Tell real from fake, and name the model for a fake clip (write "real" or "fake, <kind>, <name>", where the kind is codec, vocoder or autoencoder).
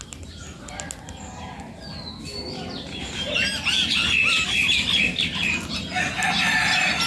real